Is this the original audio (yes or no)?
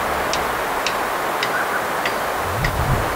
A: yes